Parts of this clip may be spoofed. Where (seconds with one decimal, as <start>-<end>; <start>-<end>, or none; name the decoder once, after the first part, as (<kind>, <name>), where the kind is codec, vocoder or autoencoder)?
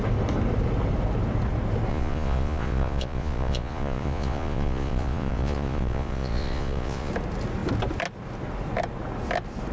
1.9-7.1 (vocoder, Vocos)